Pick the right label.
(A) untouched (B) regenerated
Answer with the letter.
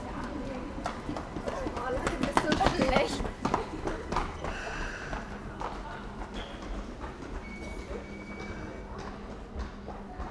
A